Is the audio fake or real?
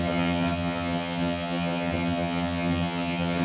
fake